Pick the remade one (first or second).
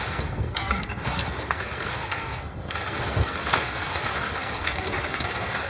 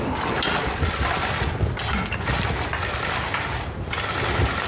first